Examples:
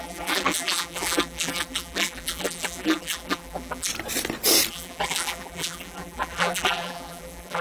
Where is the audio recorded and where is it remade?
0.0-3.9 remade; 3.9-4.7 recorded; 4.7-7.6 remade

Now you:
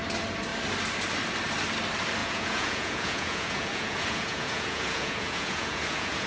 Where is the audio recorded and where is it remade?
0.0-2.2 recorded; 2.2-6.3 remade

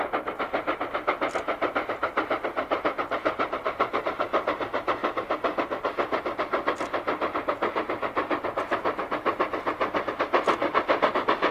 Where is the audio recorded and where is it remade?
0.0-2.0 recorded; 2.0-4.0 remade; 4.0-11.5 recorded

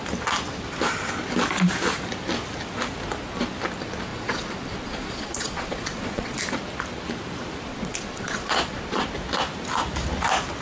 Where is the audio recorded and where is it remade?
0.0-4.1 recorded; 4.1-6.4 remade; 6.4-7.7 recorded; 7.7-9.1 remade; 9.1-10.6 recorded

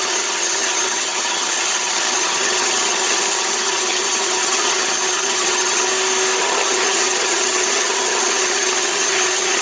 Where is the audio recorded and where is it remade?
0.0-5.9 remade; 5.9-6.4 recorded; 6.4-9.6 remade